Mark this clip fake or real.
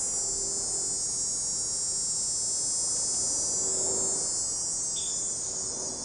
real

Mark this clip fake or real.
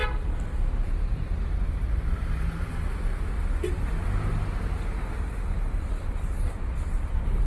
real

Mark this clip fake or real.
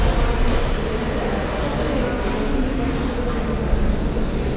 real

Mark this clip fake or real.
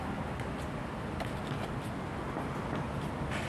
real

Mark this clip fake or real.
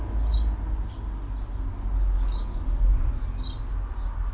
real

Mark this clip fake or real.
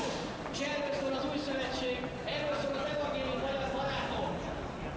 real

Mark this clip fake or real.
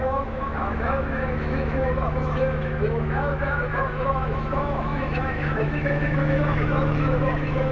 fake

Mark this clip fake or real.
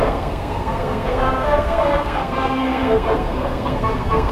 fake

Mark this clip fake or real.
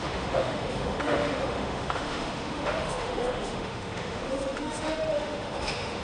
fake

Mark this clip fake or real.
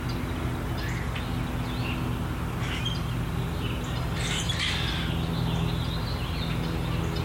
real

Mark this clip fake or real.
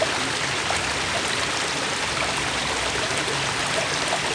real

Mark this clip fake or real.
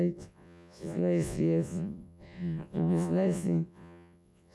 fake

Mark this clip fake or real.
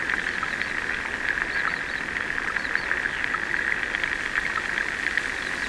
real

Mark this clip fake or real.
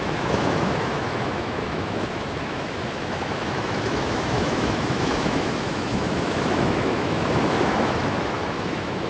fake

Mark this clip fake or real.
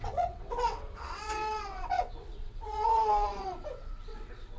fake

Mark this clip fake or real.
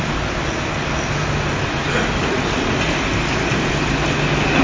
real